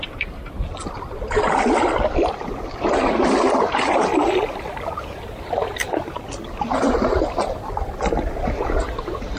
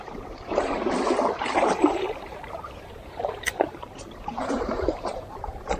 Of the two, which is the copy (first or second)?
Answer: second